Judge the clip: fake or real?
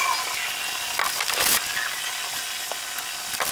real